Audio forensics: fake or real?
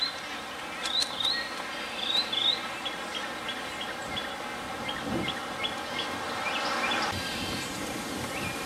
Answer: real